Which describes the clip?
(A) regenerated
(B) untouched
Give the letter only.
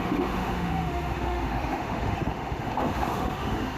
A